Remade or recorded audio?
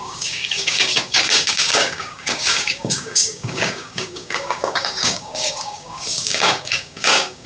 remade